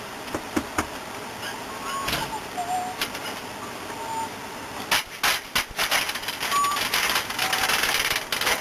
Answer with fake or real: real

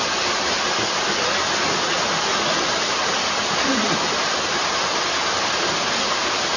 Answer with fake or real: real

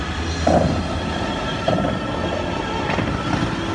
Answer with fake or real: real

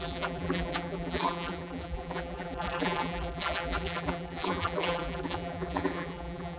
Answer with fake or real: fake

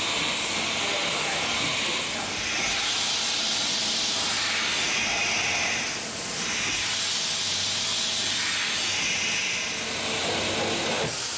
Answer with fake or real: real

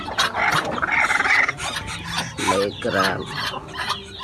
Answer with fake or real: real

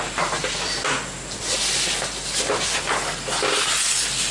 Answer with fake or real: real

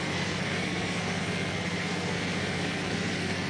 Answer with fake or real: fake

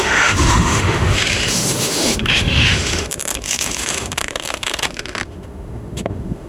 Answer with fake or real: fake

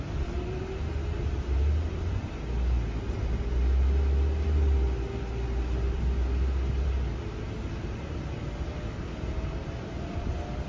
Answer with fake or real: real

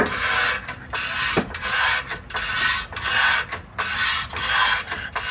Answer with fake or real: real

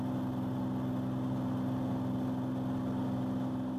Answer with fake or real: real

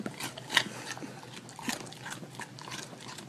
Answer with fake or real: real